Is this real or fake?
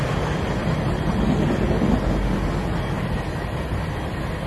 real